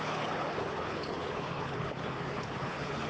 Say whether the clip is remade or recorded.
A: remade